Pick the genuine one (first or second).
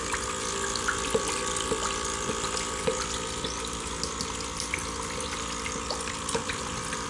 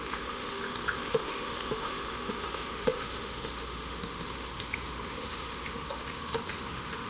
first